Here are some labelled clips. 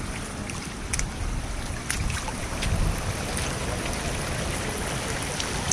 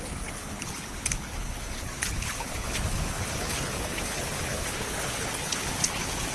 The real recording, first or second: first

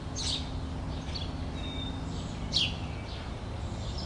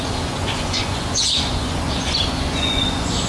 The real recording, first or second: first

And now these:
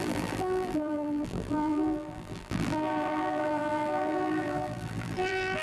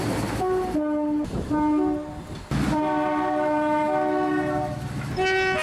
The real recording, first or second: second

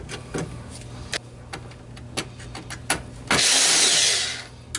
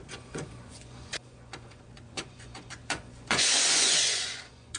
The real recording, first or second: first